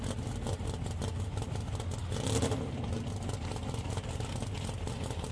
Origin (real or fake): real